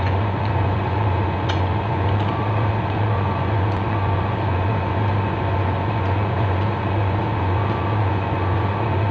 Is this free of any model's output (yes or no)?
no